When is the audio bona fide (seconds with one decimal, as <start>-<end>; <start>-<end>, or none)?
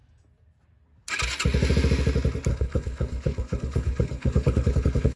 0.0-2.5